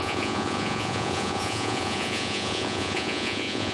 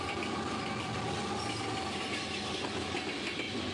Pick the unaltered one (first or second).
second